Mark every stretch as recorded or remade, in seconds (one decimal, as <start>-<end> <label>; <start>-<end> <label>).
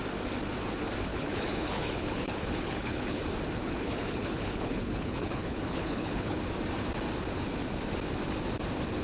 0.0-1.1 recorded; 1.1-3.2 remade; 3.2-3.6 recorded; 3.6-6.4 remade; 6.4-9.0 recorded